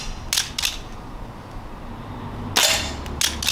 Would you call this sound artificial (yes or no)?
no